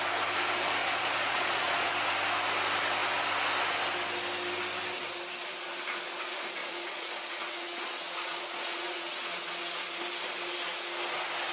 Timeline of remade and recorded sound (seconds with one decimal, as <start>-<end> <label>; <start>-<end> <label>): 0.0-0.8 recorded; 0.8-1.9 remade; 1.9-6.6 recorded; 6.6-10.0 remade; 10.0-11.5 recorded